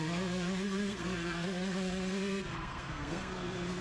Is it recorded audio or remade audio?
remade